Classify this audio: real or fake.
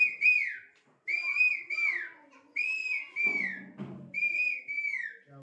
real